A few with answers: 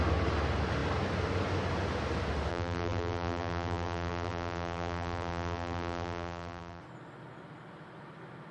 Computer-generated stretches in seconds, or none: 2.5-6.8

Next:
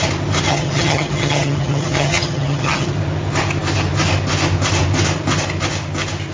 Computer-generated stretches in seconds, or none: 0.5-2.9

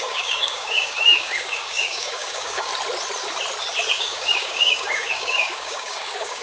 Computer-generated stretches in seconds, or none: 0.0-2.7; 3.9-6.4

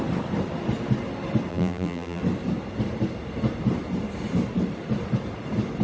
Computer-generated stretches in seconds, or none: 1.5-2.2

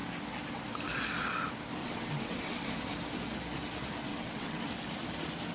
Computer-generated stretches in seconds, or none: 1.8-2.7; 4.1-4.7

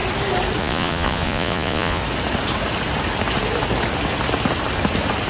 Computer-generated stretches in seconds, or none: 0.6-2.0

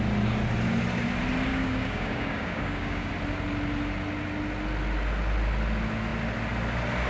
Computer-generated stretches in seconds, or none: 1.5-3.1